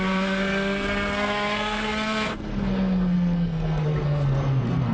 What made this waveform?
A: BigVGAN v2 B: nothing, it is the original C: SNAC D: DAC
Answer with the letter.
C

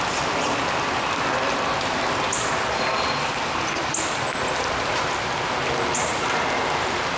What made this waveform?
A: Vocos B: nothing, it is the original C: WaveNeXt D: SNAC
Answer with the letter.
B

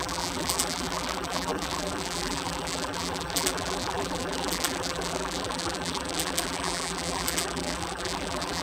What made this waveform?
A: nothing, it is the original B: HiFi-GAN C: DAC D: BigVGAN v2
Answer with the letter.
D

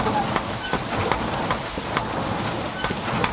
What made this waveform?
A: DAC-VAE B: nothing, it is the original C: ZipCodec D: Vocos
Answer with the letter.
B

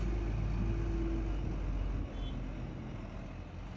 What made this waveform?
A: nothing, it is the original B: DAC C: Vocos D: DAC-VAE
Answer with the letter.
A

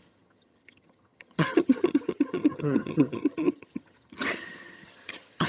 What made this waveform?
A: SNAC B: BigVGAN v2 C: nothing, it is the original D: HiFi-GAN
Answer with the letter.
D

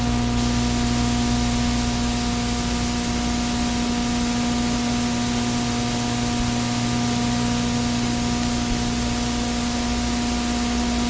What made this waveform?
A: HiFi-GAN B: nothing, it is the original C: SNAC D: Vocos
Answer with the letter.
B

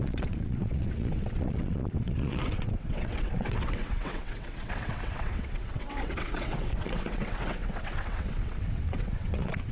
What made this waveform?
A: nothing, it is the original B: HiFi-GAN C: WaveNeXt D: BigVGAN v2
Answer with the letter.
C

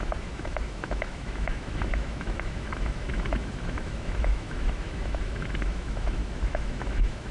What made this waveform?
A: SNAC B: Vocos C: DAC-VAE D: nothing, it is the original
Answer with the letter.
C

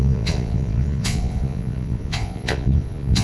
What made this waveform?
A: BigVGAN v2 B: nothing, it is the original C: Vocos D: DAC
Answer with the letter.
C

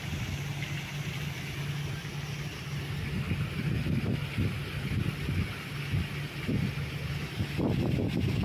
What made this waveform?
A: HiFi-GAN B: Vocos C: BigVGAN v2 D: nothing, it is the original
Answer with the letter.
D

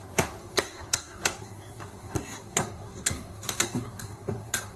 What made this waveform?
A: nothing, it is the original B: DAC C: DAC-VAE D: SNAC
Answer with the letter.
D